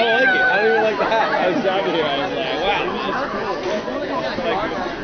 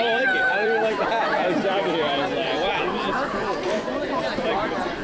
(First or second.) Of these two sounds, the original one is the first